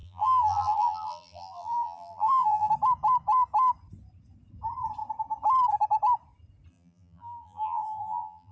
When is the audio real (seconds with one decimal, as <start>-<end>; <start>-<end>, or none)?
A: 2.7-6.7